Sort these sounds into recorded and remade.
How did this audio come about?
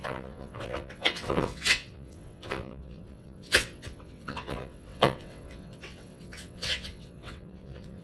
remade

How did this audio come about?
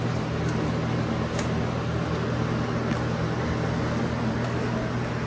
recorded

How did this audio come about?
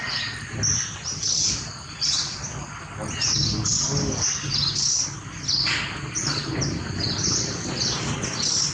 recorded